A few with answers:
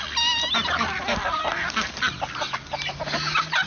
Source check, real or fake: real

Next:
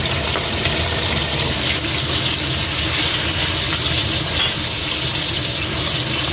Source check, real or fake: real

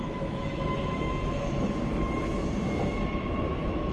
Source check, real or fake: fake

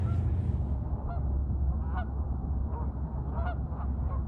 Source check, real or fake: real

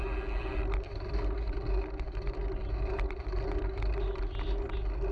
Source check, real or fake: real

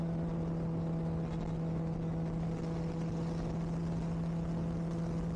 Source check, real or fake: real